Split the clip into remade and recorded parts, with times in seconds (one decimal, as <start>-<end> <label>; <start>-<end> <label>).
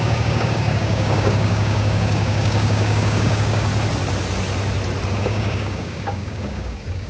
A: 0.0-3.7 remade; 3.7-5.1 recorded; 5.1-7.1 remade